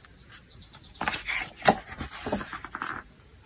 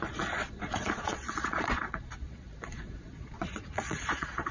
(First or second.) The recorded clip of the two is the first